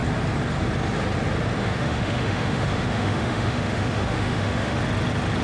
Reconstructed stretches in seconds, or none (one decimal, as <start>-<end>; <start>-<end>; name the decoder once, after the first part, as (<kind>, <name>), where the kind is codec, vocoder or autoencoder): 1.6-4.8 (autoencoder, DAC-VAE)